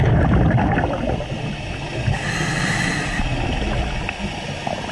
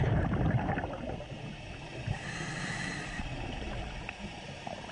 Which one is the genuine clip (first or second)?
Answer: first